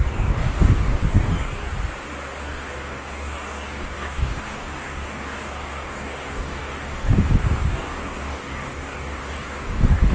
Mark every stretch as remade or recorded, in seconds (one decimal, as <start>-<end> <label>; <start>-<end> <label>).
0.0-1.7 remade; 1.7-2.4 recorded; 2.4-10.1 remade